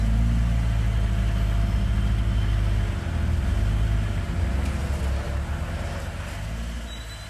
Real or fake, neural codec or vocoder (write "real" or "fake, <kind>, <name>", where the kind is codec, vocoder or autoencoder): real